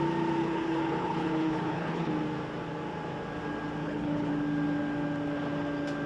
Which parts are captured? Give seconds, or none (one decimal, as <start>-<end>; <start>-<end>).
0.0-0.4; 2.1-3.8; 4.3-6.1

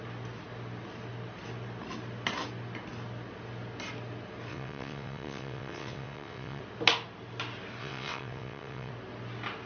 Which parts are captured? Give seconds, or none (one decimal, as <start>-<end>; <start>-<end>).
0.0-4.5; 6.6-7.8; 8.9-9.7

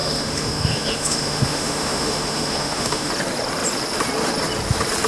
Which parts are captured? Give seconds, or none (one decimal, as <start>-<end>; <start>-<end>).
3.1-5.1

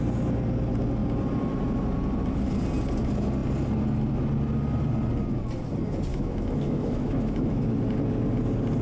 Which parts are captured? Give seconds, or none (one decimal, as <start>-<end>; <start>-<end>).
0.0-6.1; 7.6-8.8

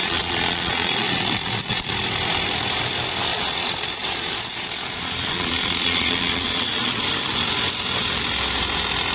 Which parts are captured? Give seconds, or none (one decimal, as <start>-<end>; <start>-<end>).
1.9-3.3; 7.0-9.1